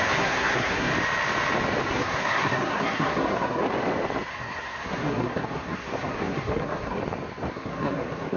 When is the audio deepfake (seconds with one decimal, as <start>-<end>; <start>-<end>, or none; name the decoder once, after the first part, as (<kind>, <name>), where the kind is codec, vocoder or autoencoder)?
0.0-0.9 (codec, SNAC); 1.9-3.6; 4.3-7.0; 7.5-8.4